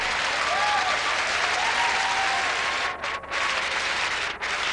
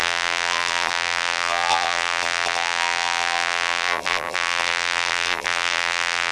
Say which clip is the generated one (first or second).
second